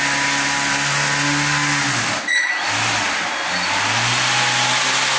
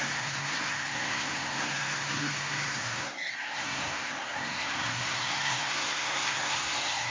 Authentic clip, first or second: first